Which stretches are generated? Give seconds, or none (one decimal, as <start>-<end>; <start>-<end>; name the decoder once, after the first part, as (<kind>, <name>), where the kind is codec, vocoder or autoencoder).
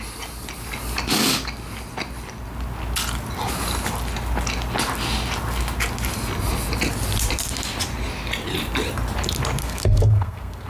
9.6-10.7 (codec, SNAC)